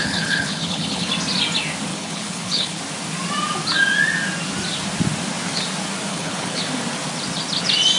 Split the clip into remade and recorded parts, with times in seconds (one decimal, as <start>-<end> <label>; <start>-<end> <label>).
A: 0.0-1.1 remade; 1.1-1.9 recorded; 1.9-2.8 remade; 2.8-6.1 recorded; 6.1-6.6 remade; 6.6-8.0 recorded